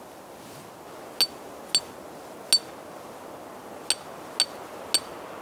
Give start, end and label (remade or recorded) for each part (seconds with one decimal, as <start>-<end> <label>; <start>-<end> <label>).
0.0-5.4 recorded